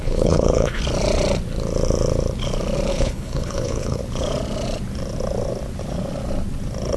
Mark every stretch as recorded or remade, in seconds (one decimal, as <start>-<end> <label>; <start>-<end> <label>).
0.0-0.8 remade; 0.8-2.9 recorded; 2.9-4.0 remade; 4.0-7.0 recorded